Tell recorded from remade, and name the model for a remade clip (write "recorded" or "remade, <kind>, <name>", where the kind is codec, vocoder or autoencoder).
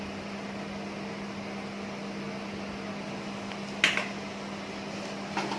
recorded